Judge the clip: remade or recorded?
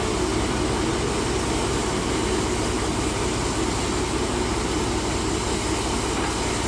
recorded